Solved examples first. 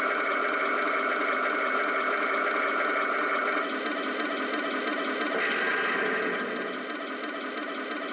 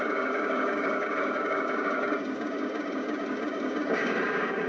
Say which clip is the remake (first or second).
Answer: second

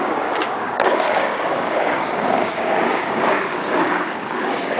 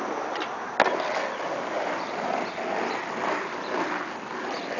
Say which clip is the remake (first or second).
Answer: first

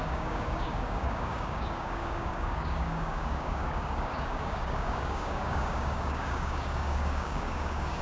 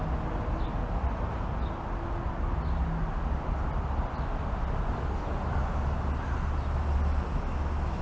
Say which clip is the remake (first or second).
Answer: first